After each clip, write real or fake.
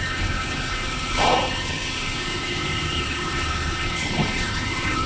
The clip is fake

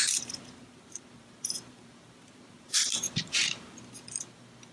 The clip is fake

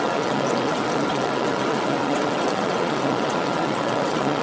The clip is fake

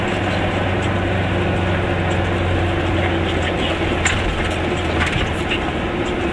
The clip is real